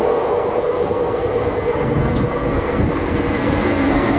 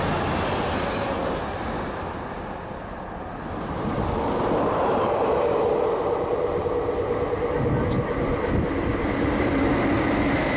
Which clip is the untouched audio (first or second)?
second